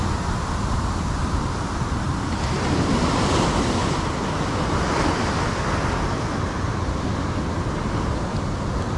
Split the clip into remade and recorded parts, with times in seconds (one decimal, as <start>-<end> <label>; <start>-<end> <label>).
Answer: 0.0-9.0 recorded